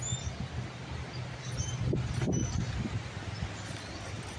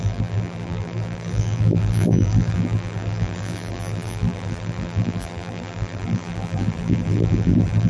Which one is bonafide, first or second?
first